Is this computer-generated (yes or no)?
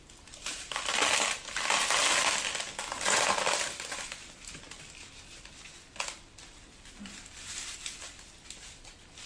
no